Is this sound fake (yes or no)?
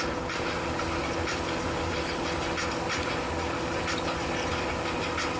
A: no